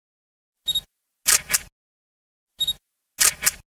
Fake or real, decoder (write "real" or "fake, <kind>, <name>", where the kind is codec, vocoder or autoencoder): real